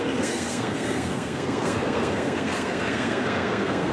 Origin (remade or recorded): remade